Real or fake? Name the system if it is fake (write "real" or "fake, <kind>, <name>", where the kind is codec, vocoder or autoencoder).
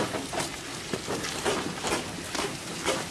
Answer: real